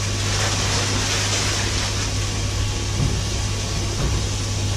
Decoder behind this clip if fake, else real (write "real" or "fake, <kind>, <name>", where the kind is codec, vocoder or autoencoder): real